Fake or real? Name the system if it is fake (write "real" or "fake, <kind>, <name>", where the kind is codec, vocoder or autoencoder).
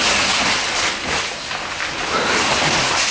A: real